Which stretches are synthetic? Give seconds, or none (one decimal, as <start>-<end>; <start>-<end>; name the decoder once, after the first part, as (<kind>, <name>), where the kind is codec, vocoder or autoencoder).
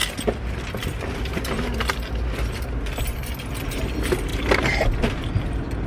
none